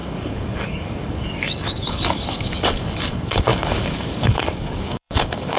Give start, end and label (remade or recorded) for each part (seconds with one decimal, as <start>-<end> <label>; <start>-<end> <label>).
0.0-5.6 remade

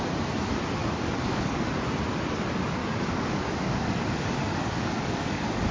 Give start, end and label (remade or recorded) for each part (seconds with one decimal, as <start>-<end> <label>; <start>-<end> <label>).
0.0-0.8 recorded; 0.8-1.7 remade; 1.7-2.8 recorded; 2.8-5.7 remade

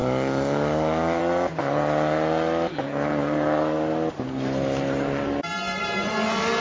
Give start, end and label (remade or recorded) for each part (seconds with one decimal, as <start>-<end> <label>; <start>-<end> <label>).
0.0-1.2 remade; 1.2-6.6 recorded

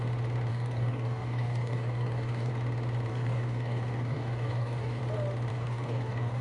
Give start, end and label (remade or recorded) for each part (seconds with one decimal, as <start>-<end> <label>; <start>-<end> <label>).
0.0-0.5 recorded; 0.5-2.5 remade; 2.5-3.1 recorded; 3.1-5.0 remade; 5.0-5.5 recorded; 5.5-6.4 remade

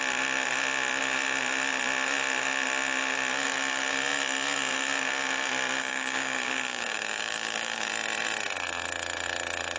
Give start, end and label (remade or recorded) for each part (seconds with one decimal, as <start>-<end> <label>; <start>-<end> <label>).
0.0-5.8 recorded; 5.8-7.9 remade; 7.9-9.8 recorded

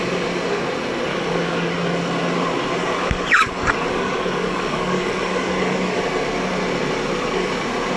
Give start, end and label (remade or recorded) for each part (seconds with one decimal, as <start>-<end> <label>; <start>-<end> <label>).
0.0-1.1 recorded; 1.1-1.7 remade; 1.7-2.8 recorded; 2.8-6.0 remade; 6.0-8.0 recorded